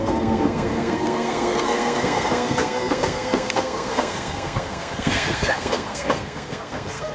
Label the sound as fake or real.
fake